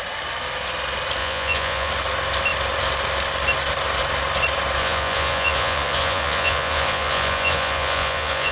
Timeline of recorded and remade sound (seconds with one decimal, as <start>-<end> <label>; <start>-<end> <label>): 0.0-1.2 recorded; 1.2-1.9 remade; 1.9-4.8 recorded; 4.8-8.5 remade